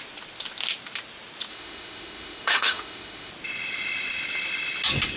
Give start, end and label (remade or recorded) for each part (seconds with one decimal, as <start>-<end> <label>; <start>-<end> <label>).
0.0-1.5 recorded; 1.5-3.3 remade; 3.3-5.2 recorded